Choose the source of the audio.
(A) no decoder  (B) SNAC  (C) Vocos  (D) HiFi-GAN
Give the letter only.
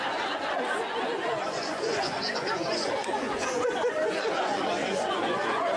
C